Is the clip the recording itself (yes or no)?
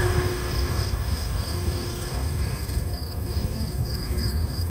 no